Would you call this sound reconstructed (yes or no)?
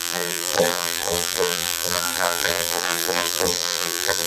yes